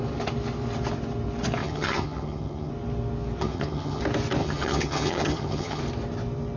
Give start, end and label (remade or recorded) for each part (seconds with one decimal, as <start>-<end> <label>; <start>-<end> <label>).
0.0-1.6 recorded; 1.6-2.7 remade; 2.7-3.4 recorded; 3.4-4.0 remade; 4.0-4.4 recorded; 4.4-5.8 remade; 5.8-6.6 recorded